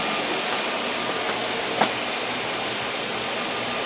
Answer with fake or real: real